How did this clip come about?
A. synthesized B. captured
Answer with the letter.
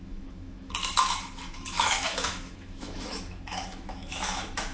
A